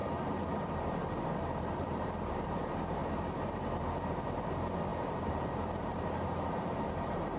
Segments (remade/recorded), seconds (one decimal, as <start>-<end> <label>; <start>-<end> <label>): 0.0-7.4 remade